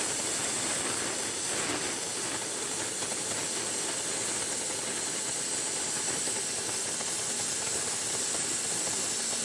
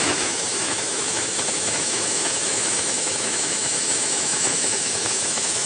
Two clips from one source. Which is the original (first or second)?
first